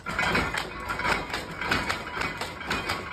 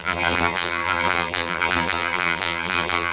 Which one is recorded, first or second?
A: first